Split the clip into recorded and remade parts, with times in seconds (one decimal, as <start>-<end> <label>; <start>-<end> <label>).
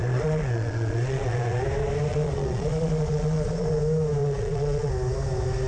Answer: 0.0-1.6 remade; 1.6-2.1 recorded; 2.1-3.8 remade; 3.8-4.2 recorded; 4.2-4.9 remade; 4.9-5.7 recorded